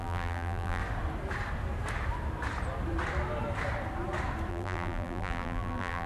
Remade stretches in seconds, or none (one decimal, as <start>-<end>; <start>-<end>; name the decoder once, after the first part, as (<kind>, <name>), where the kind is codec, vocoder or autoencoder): 0.0-0.8 (vocoder, BigVGAN v2); 4.5-6.1